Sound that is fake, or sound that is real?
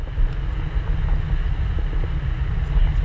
real